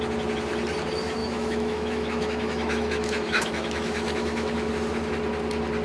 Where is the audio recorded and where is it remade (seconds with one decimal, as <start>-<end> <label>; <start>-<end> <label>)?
0.0-1.2 recorded; 1.2-4.7 remade; 4.7-5.8 recorded